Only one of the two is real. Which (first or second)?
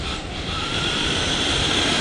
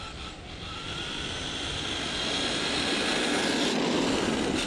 second